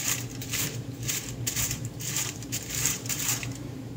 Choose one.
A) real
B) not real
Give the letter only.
B